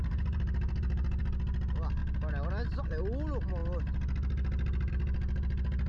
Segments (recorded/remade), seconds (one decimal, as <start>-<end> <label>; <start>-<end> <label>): 0.0-1.2 remade; 1.2-5.9 recorded